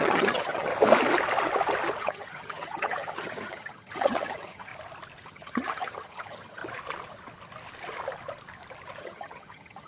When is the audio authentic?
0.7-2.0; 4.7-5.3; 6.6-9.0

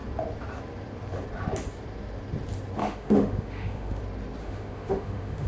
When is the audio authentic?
0.0-2.8; 4.0-4.4

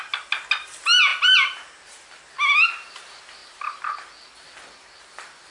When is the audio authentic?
0.0-5.5

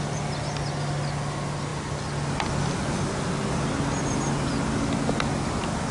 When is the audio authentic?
0.0-5.9

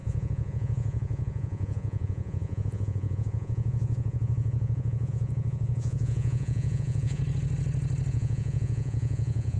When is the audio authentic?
7.2-8.1

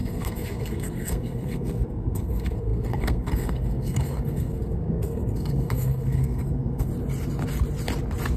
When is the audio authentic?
6.9-8.4